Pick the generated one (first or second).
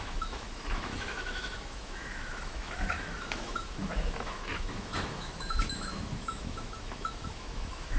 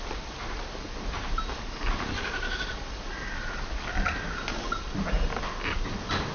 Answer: first